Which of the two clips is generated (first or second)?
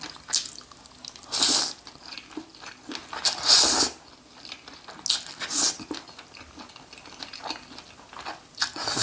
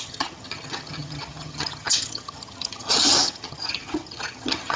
second